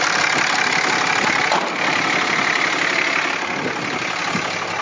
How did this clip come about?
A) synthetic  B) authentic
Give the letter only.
B